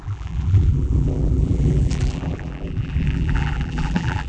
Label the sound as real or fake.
fake